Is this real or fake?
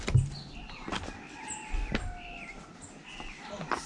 real